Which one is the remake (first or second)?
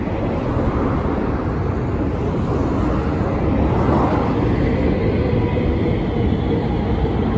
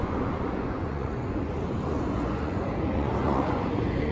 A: second